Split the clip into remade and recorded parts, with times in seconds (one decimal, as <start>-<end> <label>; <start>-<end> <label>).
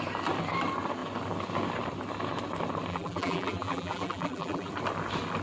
0.0-2.9 recorded; 2.9-4.7 remade; 4.7-5.4 recorded